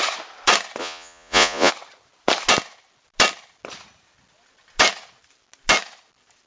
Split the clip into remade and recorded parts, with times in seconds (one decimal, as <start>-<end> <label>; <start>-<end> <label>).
0.0-0.8 recorded; 0.8-1.7 remade; 1.7-6.5 recorded